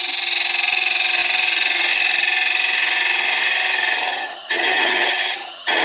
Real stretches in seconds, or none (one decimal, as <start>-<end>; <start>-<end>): 0.0-4.1